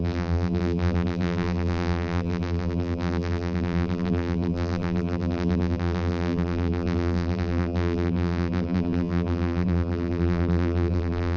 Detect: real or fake fake